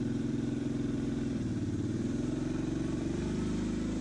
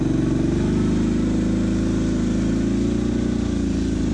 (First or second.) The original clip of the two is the second